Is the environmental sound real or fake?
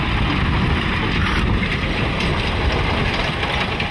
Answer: real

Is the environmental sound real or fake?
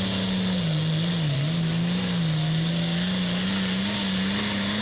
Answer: real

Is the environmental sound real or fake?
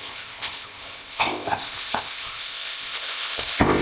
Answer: fake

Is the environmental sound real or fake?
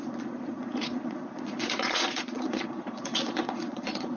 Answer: fake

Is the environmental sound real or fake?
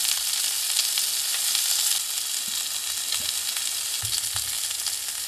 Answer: real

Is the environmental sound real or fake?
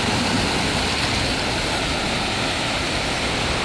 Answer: real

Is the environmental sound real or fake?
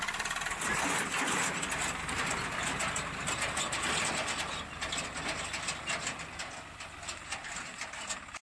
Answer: real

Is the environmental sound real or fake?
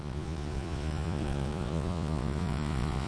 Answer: fake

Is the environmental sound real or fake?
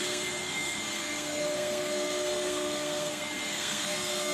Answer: fake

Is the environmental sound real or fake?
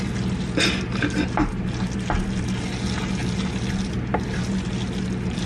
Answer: real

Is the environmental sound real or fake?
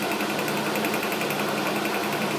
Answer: real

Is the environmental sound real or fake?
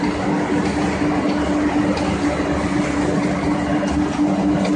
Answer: real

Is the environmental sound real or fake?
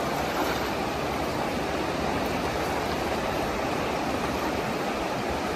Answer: real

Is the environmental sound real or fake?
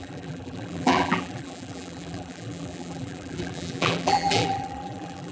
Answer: fake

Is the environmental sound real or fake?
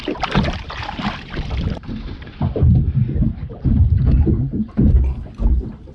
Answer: fake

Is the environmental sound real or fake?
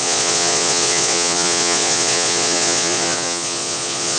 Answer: fake